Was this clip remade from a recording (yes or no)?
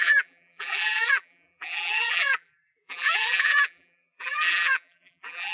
yes